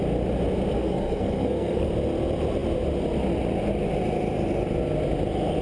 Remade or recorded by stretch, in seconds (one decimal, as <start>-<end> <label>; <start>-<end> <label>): 0.0-0.7 recorded; 0.7-1.9 remade; 1.9-5.6 recorded